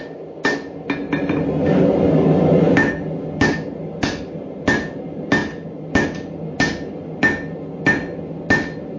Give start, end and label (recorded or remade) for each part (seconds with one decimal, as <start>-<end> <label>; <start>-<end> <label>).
0.0-5.4 recorded; 5.4-5.9 remade; 5.9-9.0 recorded